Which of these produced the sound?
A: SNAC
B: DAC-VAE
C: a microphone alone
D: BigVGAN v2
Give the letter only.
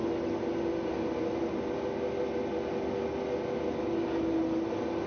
C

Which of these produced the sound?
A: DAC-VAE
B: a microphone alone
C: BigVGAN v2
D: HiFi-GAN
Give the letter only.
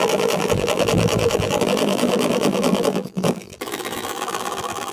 C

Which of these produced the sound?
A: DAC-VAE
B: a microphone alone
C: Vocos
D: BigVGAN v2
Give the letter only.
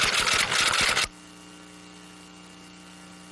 B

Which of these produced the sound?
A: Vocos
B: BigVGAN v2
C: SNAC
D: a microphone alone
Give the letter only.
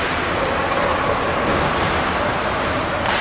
B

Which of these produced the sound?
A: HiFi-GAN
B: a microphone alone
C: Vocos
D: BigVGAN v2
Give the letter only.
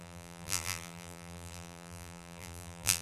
D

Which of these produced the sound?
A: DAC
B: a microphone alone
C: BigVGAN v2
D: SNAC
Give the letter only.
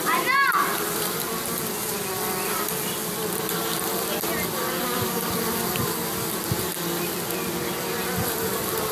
B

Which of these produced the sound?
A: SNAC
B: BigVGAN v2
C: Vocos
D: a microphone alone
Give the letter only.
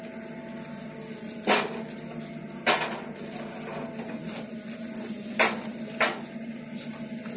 D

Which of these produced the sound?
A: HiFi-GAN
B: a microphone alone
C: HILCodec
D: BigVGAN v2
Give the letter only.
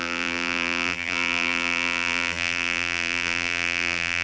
D